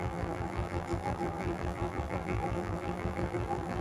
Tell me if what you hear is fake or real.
fake